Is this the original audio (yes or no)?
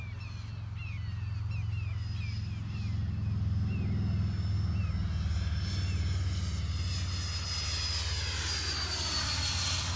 yes